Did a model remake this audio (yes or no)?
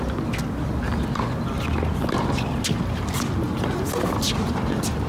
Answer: no